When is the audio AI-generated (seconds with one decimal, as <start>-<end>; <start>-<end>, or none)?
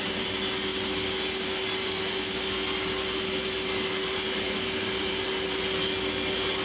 none